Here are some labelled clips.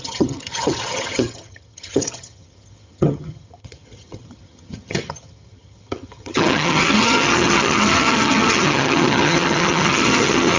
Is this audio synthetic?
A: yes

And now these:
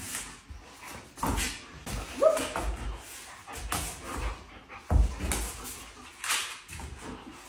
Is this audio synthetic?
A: no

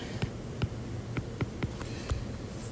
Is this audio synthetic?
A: no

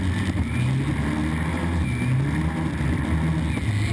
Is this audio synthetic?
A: no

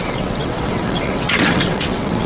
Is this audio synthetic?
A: yes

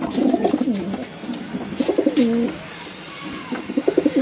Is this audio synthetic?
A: no